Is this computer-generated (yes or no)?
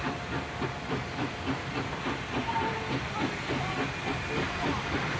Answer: no